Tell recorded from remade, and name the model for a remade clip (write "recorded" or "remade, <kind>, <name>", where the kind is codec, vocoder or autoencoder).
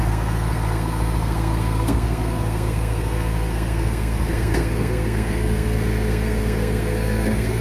remade, codec, SNAC